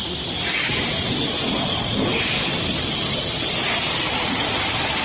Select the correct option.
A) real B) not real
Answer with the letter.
A